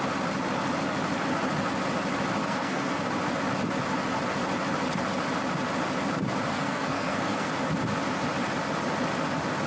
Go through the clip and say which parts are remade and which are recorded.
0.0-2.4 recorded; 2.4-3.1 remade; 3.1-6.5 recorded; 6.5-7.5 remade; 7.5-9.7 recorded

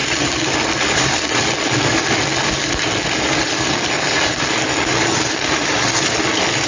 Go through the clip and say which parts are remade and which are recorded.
0.0-6.7 recorded

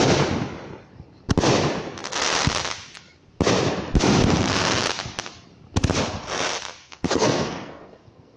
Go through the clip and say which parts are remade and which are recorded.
0.0-6.8 recorded; 6.8-8.4 remade

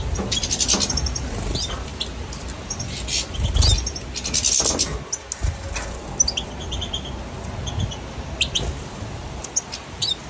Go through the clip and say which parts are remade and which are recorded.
0.0-10.3 recorded

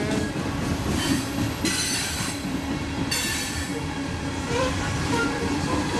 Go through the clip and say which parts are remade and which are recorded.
0.0-3.7 remade; 3.7-4.4 recorded; 4.4-6.0 remade